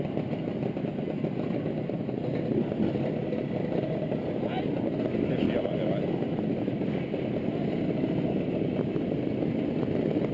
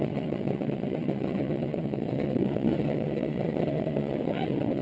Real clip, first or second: first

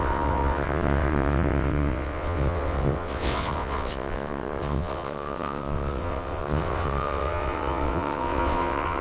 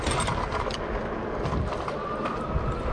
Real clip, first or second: second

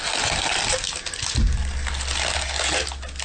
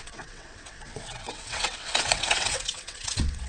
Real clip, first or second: first